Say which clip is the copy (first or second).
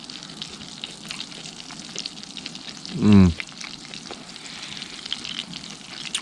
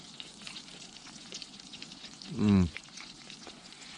second